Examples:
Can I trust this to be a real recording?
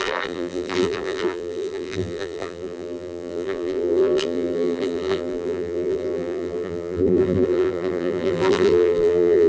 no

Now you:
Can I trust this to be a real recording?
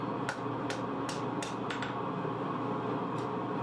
yes